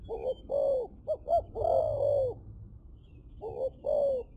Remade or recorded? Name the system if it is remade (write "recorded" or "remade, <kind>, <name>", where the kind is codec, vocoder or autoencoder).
recorded